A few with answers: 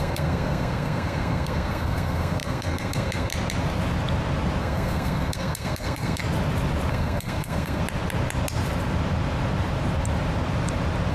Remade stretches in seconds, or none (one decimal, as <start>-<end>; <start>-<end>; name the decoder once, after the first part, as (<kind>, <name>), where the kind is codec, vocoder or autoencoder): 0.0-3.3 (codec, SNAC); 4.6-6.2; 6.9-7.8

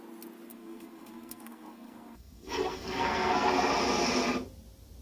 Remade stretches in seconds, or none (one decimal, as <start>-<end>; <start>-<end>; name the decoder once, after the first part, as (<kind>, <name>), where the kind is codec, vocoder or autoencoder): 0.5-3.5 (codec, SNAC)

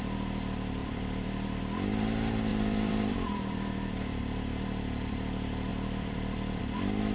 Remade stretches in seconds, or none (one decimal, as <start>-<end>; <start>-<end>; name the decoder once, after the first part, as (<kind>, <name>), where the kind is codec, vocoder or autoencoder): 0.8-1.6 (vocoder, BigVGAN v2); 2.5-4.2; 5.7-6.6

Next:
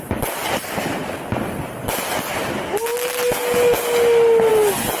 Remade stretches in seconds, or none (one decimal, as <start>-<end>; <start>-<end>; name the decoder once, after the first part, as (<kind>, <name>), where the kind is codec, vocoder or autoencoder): none